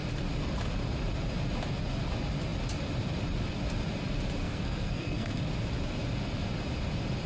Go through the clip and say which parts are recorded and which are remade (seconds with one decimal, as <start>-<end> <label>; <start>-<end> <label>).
0.0-4.4 recorded; 4.4-5.4 remade; 5.4-7.3 recorded